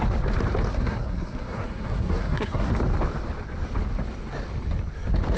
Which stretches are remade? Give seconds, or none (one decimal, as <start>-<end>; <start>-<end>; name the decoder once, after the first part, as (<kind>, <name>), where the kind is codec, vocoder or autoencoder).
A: 0.7-2.7 (codec, SNAC)

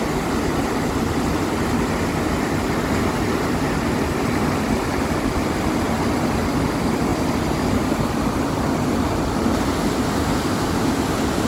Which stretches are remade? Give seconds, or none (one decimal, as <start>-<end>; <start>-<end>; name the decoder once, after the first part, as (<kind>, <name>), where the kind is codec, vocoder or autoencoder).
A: none

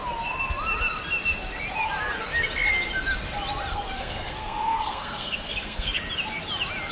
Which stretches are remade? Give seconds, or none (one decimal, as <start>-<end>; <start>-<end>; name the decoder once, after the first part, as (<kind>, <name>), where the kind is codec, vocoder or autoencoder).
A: 3.7-6.0 (codec, SNAC)

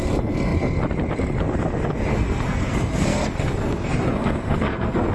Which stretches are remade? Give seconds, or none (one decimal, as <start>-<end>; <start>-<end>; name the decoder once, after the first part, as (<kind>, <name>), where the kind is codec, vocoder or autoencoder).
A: 2.1-5.1 (codec, SNAC)

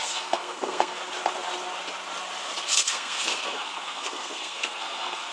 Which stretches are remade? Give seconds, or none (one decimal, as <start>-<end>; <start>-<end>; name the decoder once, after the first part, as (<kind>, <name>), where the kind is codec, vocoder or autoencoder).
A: 0.0-1.0 (codec, SNAC); 2.7-5.3